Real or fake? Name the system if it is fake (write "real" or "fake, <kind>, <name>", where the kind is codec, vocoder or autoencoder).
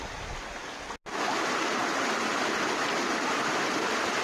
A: real